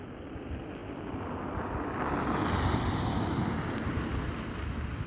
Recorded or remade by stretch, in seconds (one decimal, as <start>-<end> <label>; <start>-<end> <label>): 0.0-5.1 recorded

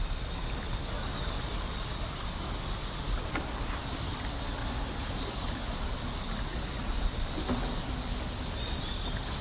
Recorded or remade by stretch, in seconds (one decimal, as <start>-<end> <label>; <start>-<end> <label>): 0.0-9.4 recorded

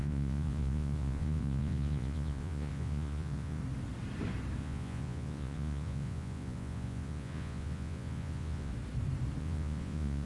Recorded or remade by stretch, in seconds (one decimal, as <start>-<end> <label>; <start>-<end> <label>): 0.0-3.6 remade; 3.6-4.6 recorded; 4.6-8.7 remade; 8.7-9.4 recorded; 9.4-10.2 remade

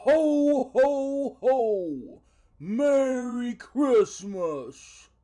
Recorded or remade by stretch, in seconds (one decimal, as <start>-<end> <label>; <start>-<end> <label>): 0.0-2.1 recorded; 2.1-3.5 remade; 3.5-5.2 recorded

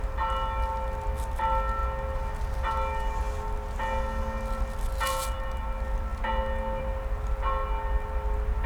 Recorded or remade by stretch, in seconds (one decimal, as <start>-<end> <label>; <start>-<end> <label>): 0.0-8.7 recorded